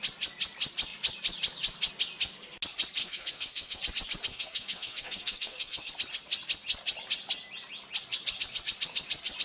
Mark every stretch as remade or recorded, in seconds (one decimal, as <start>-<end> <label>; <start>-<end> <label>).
0.0-3.0 recorded; 3.0-3.8 remade; 3.8-4.3 recorded; 4.3-5.9 remade; 5.9-9.4 recorded